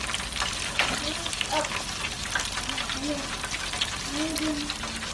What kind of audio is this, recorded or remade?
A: recorded